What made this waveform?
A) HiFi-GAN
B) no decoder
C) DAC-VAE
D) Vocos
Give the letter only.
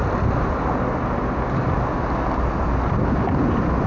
B